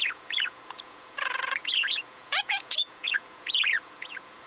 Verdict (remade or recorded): remade